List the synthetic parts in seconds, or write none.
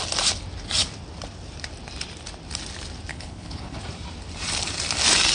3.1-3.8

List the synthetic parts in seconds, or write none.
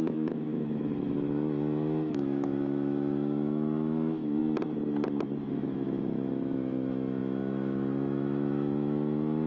0.0-4.4; 5.4-9.5